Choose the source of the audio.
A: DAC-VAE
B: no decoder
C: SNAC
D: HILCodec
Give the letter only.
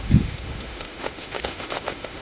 A